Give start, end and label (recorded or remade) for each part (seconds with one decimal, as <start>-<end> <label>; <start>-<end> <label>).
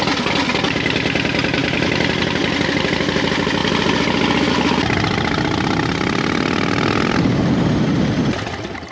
0.0-8.9 recorded